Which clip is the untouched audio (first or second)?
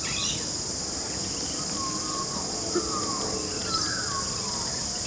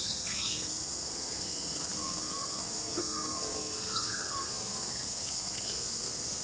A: first